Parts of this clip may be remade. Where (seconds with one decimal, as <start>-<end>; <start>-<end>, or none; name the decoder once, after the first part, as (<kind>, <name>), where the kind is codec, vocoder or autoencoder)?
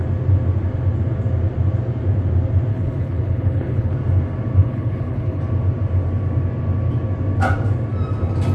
2.7-3.9 (codec, HILCodec); 4.6-5.4